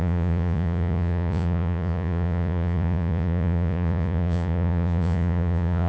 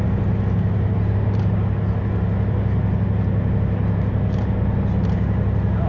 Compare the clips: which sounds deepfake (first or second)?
first